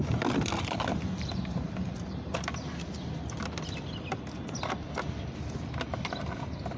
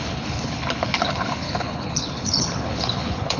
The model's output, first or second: second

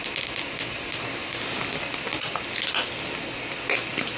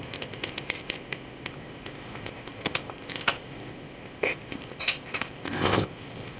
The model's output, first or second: second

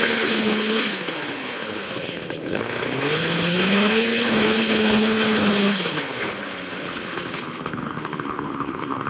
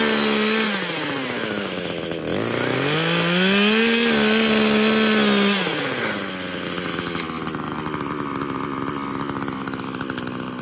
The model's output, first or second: first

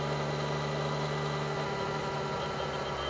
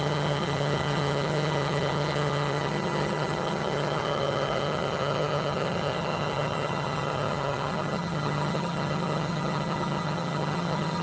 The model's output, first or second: second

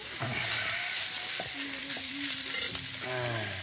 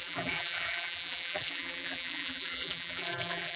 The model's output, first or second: second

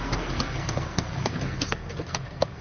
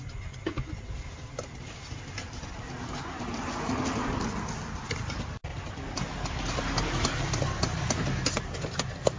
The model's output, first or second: first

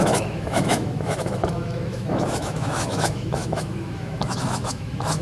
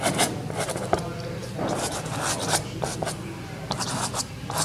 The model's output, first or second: first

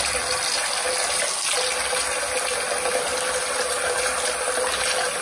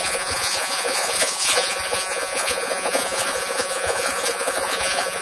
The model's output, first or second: second